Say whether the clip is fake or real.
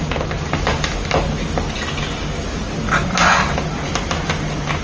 real